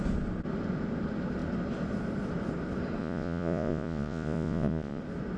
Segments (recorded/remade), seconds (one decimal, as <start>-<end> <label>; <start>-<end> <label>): 0.0-3.0 recorded; 3.0-5.0 remade; 5.0-5.4 recorded